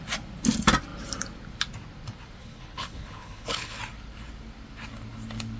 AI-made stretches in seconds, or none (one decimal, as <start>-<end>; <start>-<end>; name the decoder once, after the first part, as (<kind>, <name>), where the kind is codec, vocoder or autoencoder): 2.4-3.8 (codec, HILCodec)

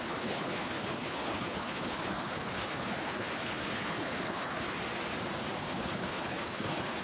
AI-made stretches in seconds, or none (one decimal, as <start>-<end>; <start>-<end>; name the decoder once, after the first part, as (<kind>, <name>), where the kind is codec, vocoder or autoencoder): 0.0-4.8 (codec, HILCodec); 5.6-7.0

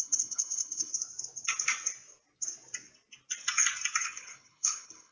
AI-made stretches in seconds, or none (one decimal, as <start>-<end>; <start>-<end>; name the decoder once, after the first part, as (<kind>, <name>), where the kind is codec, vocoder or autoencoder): 0.0-0.9 (codec, HILCodec); 4.0-5.1

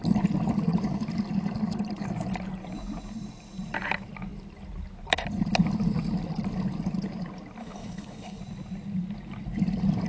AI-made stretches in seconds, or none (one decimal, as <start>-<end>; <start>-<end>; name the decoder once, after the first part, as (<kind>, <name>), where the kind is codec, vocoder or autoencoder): 7.6-8.4 (codec, HILCodec)

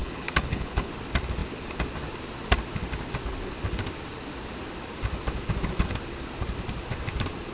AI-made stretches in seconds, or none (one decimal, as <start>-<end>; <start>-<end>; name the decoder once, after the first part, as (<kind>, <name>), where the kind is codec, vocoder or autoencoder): 0.0-0.9 (codec, HILCodec)

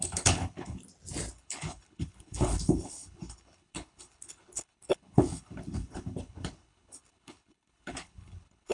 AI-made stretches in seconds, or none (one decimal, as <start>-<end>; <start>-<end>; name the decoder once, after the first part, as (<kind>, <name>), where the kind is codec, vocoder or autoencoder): 0.0-0.8 (codec, HILCodec); 1.3-8.7